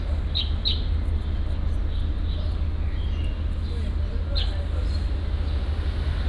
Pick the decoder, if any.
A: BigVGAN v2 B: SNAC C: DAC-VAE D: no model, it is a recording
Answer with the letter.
D